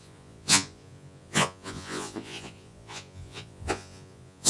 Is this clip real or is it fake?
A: fake